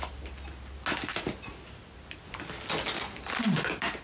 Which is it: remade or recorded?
recorded